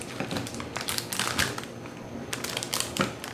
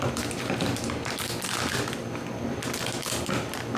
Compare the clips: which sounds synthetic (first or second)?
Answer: first